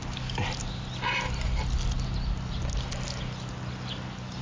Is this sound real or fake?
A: real